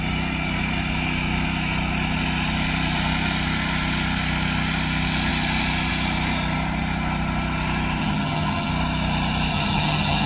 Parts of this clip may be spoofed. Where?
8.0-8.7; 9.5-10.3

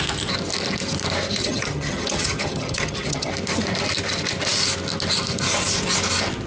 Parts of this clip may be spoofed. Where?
1.4-3.3

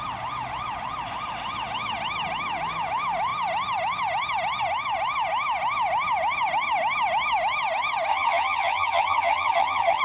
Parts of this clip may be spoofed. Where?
8.1-10.0

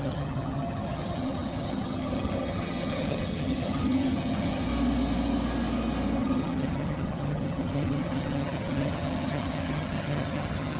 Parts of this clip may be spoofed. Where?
0.0-4.7; 6.2-10.8

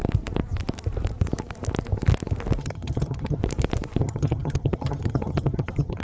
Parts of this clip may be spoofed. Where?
2.6-3.4; 4.0-6.0

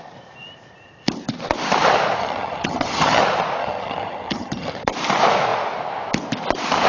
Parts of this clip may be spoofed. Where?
2.2-3.2; 3.6-4.8

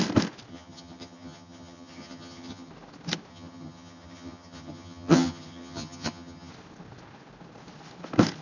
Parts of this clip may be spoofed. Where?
0.5-2.7; 3.3-6.5